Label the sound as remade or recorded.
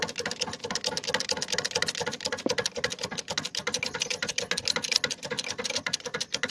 recorded